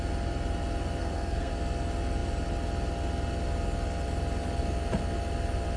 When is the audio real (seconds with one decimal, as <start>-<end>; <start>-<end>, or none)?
0.0-1.0; 1.5-5.8